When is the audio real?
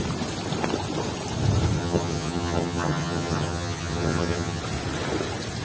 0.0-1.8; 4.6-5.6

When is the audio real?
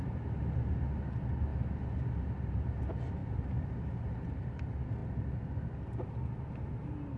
0.0-3.2; 4.6-7.2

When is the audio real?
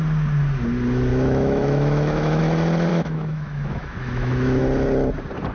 0.0-1.1; 2.4-2.9; 4.6-5.5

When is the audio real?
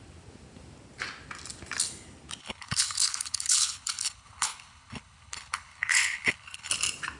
0.0-2.4; 6.7-7.2